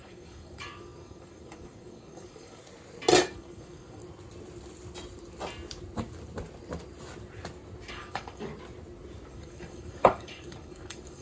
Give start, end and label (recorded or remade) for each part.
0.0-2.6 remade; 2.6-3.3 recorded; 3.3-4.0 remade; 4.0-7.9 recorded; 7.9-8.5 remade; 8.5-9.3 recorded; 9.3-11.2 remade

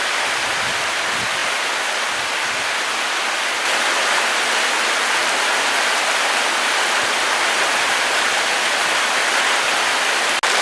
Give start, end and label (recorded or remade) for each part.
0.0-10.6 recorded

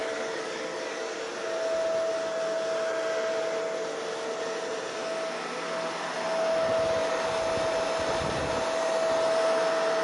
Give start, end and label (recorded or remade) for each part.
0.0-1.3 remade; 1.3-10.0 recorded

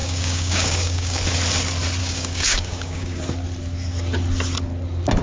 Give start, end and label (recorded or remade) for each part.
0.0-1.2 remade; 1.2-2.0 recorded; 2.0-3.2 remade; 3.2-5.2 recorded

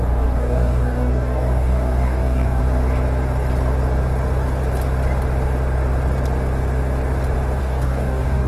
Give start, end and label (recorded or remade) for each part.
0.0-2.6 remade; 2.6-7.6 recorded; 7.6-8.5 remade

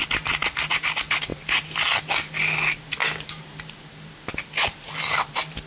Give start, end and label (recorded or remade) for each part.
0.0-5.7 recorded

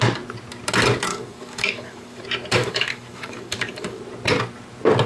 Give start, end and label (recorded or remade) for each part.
0.0-1.1 recorded; 1.1-2.2 remade; 2.2-2.6 recorded; 2.6-4.0 remade; 4.0-5.1 recorded

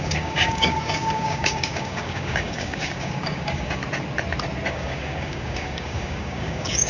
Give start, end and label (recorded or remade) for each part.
0.0-3.8 remade; 3.8-4.7 recorded; 4.7-6.9 remade